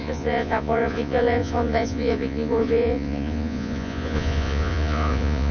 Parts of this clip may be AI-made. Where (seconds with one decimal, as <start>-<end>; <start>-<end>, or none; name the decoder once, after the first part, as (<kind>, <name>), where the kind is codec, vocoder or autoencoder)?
0.0-5.5 (vocoder, Vocos)